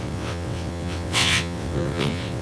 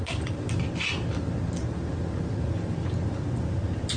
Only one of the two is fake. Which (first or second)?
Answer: first